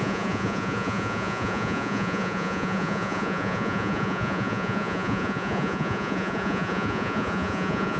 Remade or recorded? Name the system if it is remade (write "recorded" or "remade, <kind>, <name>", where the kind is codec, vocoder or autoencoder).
remade, vocoder, Vocos